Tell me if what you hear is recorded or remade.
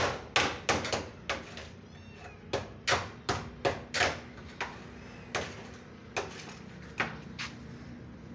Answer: recorded